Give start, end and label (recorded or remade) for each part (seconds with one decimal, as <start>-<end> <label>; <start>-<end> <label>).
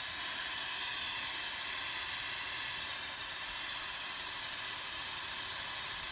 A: 0.0-6.1 recorded